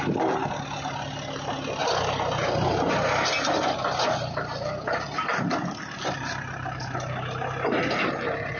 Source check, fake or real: real